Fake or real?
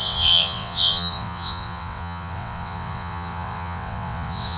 fake